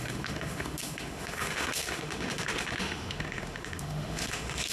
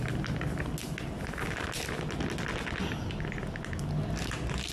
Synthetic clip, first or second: first